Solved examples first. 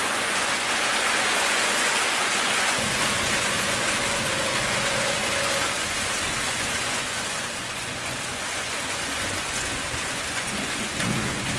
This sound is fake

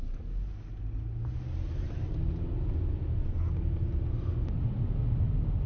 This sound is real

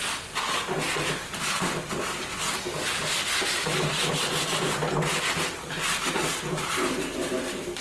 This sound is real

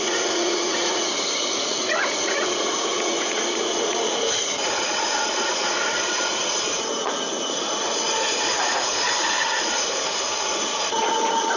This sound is fake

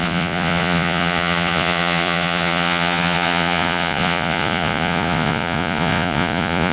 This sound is fake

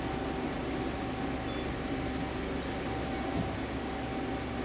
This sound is real